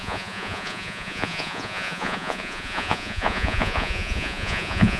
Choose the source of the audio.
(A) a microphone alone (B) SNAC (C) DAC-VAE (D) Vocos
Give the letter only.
D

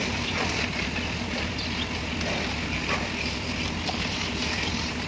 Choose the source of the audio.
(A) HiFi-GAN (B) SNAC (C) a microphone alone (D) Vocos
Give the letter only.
C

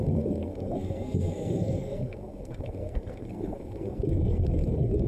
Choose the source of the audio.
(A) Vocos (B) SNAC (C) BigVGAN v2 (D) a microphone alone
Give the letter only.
B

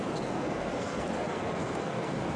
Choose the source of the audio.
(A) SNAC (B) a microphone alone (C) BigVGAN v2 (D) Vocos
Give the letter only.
A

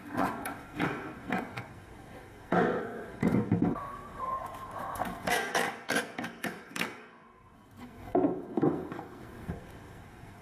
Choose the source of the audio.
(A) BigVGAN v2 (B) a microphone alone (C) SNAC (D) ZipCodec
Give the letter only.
C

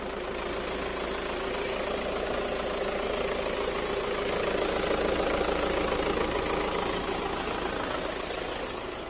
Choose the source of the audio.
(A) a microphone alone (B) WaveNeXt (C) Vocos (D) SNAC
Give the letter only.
A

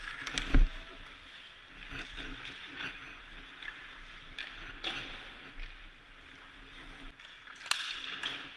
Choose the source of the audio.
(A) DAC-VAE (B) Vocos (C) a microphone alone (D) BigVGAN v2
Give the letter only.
C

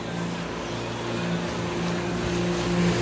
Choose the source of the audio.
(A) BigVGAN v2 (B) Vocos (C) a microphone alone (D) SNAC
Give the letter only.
C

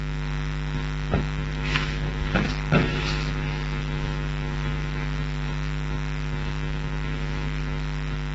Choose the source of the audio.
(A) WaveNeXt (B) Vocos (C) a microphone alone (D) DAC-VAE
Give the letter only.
D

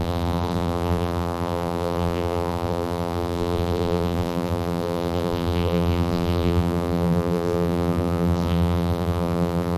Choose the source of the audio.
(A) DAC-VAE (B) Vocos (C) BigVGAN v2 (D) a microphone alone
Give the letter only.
C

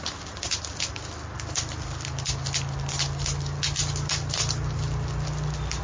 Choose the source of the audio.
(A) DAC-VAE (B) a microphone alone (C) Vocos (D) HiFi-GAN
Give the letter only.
B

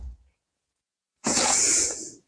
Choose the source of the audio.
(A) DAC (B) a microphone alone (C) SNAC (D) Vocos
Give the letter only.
D